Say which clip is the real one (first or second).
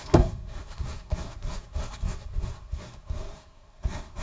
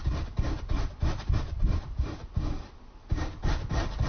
second